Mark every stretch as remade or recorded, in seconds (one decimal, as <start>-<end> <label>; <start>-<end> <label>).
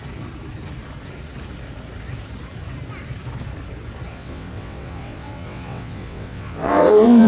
0.0-4.1 recorded; 4.1-7.3 remade